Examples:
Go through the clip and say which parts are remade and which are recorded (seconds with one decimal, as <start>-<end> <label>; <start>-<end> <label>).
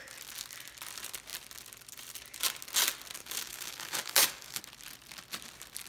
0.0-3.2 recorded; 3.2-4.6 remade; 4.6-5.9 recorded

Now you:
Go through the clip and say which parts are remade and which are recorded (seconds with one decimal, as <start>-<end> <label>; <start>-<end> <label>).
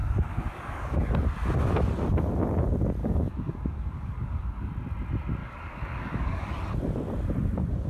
0.0-1.1 remade; 1.1-3.0 recorded; 3.0-4.7 remade; 4.7-5.4 recorded; 5.4-6.5 remade; 6.5-7.9 recorded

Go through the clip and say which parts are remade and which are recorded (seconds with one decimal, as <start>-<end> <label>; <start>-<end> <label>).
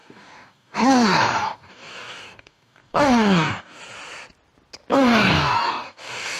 0.0-3.8 remade; 3.8-4.9 recorded; 4.9-6.4 remade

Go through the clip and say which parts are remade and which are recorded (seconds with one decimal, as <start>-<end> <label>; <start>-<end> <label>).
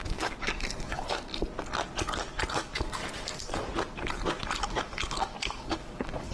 0.0-1.3 remade; 1.3-2.5 recorded; 2.5-3.0 remade; 3.0-4.6 recorded; 4.6-6.3 remade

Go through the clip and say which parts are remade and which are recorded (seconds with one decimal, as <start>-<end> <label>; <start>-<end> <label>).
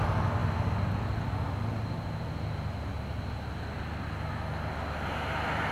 0.0-5.7 recorded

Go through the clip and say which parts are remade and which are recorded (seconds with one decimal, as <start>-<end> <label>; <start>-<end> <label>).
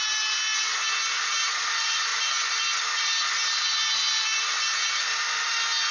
0.0-5.9 recorded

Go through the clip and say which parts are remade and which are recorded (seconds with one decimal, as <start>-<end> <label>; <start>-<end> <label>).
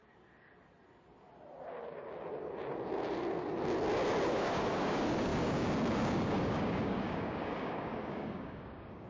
0.0-4.3 recorded; 4.3-9.1 remade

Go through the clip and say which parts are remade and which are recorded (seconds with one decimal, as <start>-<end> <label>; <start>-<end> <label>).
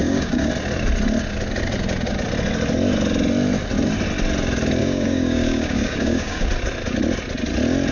0.0-0.5 remade; 0.5-4.8 recorded; 4.8-6.5 remade; 6.5-7.9 recorded